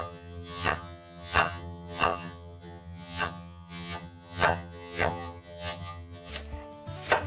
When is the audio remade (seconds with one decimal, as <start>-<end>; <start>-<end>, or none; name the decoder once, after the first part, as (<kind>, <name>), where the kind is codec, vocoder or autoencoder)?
0.0-6.3 (vocoder, HiFi-GAN)